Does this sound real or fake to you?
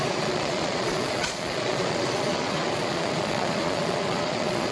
fake